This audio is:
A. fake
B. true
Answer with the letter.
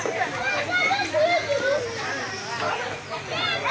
B